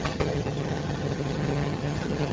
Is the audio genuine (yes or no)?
no